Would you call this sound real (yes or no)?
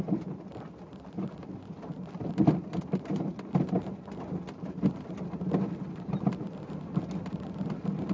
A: yes